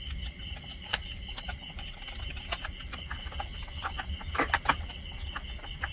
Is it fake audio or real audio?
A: real